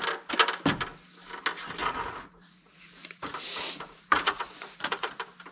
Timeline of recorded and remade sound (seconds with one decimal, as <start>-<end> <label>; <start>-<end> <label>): 0.0-1.8 recorded; 1.8-5.1 remade; 5.1-5.5 recorded